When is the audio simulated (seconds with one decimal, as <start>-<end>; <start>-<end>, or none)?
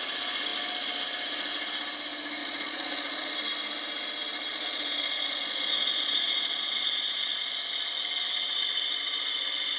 2.4-3.3; 4.5-7.4